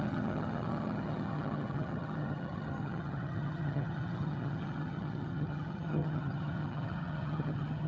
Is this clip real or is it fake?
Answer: fake